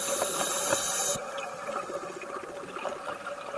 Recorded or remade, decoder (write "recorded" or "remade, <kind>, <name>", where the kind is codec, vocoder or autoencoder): recorded